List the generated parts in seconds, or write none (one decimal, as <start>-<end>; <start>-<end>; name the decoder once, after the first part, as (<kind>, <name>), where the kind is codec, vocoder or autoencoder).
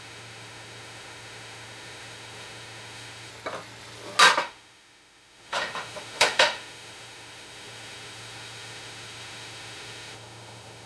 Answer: 0.0-3.3 (autoencoder, DAC-VAE); 4.4-10.9